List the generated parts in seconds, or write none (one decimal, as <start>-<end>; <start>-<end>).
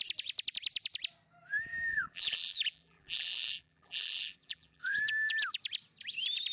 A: 1.9-5.0